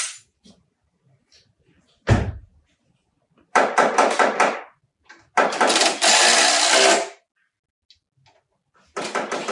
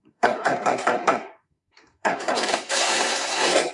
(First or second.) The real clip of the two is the first